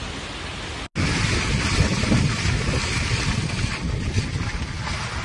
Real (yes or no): yes